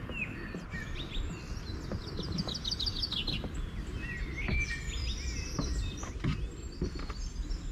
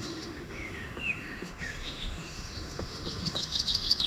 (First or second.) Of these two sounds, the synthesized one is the second